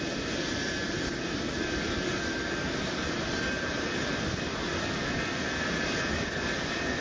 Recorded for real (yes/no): yes